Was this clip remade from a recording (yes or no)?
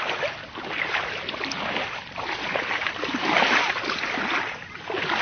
no